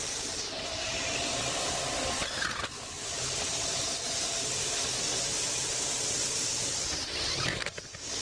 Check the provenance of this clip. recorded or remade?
recorded